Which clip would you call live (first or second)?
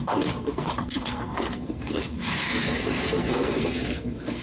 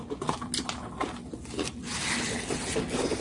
second